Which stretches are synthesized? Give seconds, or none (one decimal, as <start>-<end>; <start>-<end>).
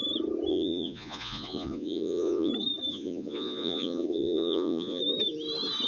0.5-2.5; 2.9-5.0